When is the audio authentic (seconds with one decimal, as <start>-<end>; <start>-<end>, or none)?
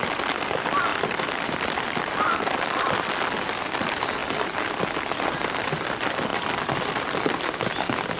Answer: 0.0-0.9; 3.1-4.2; 4.9-8.2